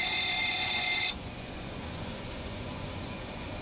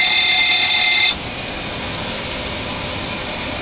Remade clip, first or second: first